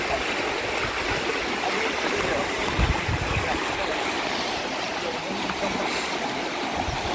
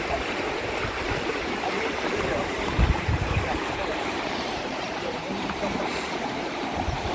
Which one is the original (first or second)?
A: first